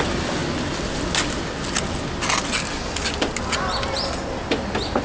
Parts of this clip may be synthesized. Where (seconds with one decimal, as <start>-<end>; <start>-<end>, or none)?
none